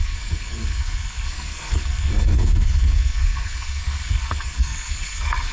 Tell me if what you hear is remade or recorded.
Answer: remade